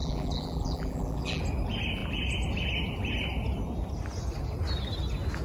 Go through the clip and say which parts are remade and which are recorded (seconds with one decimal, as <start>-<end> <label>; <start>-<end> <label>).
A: 0.0-1.4 remade; 1.4-5.4 recorded